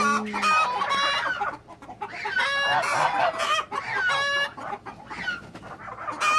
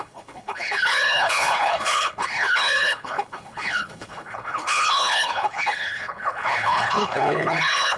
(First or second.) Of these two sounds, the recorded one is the first